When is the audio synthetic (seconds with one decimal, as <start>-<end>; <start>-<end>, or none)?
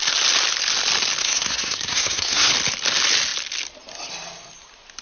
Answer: 1.2-2.5